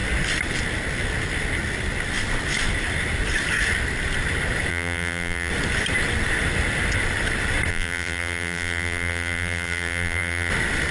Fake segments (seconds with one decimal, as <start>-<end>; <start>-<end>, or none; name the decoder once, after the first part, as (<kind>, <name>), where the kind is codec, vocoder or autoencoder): 4.7-5.5 (vocoder, BigVGAN v2); 7.7-10.5